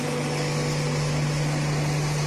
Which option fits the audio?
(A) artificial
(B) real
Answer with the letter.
B